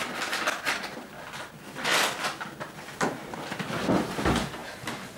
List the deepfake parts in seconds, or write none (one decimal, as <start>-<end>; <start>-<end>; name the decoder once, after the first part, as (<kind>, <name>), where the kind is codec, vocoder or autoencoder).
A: none